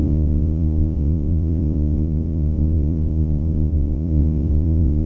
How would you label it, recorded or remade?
remade